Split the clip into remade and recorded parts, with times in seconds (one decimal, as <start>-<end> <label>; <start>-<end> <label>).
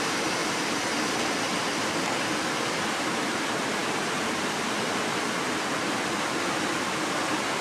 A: 0.0-7.6 recorded